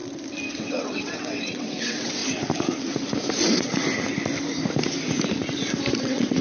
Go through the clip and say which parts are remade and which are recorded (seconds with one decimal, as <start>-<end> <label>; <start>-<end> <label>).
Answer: 0.0-0.5 recorded; 0.5-2.2 remade; 2.2-6.0 recorded; 6.0-6.4 remade